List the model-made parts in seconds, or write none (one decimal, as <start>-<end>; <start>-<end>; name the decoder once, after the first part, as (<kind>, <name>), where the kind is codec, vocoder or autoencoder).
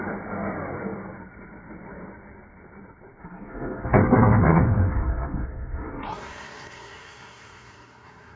3.2-8.4 (codec, SNAC)